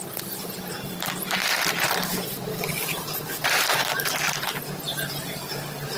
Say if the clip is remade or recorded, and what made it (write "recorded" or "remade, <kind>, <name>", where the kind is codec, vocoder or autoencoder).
recorded